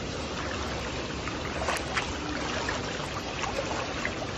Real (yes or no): yes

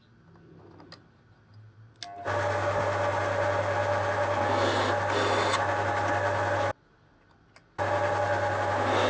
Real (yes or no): yes